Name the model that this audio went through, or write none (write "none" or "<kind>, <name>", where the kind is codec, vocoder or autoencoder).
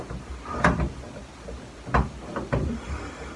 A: none